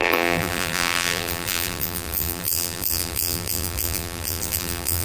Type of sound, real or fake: fake